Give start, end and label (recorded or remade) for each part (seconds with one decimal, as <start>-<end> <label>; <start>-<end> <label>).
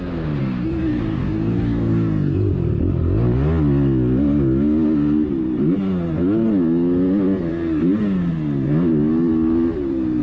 0.0-0.4 recorded; 0.4-2.5 remade; 2.5-10.2 recorded